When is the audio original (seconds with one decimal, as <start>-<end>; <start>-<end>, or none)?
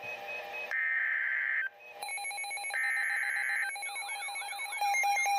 2.1-4.5